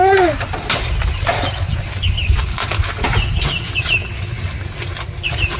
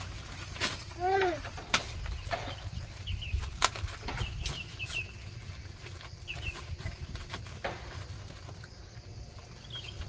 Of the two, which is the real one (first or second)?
first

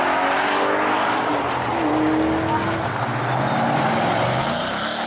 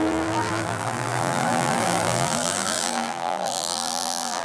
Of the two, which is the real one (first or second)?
first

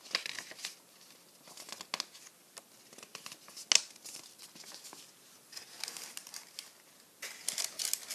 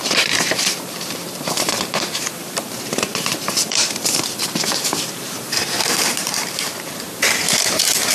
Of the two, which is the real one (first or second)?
first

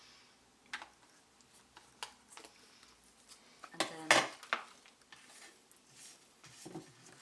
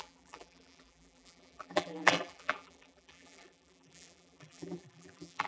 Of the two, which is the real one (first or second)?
first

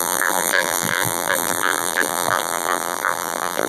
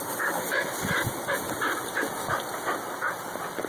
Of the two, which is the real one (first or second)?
second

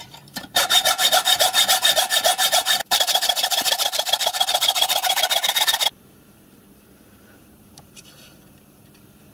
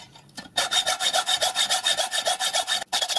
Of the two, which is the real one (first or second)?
second